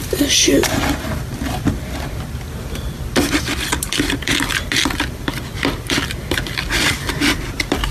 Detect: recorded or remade remade